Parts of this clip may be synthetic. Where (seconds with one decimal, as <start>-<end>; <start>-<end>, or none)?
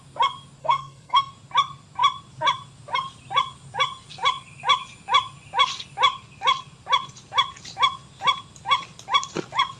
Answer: 0.6-1.3